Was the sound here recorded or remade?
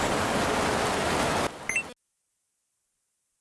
recorded